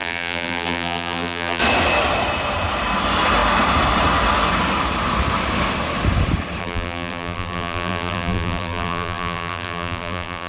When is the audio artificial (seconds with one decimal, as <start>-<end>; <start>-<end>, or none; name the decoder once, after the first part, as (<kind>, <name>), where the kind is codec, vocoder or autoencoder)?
0.0-1.6 (vocoder, BigVGAN v2); 6.6-10.5